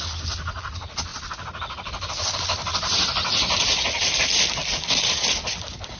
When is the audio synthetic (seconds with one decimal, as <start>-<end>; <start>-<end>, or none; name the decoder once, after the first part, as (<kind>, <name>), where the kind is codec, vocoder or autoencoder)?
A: none